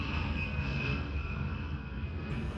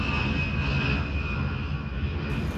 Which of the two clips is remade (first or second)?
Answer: first